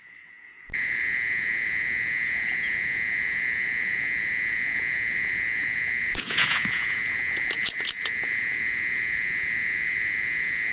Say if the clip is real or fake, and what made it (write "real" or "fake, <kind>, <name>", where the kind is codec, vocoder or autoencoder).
fake, vocoder, Vocos